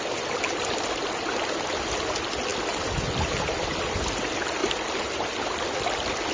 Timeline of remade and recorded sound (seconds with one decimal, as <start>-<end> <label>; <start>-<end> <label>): 0.0-6.3 recorded